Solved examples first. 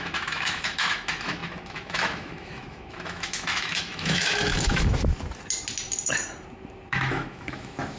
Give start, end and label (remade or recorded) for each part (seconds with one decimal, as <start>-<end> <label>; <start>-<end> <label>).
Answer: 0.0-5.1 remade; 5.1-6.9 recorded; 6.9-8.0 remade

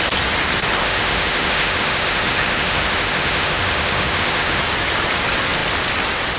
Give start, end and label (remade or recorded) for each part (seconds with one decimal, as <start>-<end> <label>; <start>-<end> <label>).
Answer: 0.0-0.8 recorded; 0.8-4.6 remade; 4.6-6.4 recorded

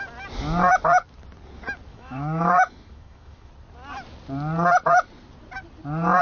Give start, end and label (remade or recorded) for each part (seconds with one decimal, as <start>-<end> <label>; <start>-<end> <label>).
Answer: 0.0-1.9 recorded; 1.9-3.5 remade; 3.5-6.2 recorded